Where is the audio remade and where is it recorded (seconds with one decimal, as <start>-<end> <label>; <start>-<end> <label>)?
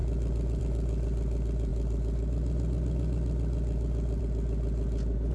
0.0-5.3 recorded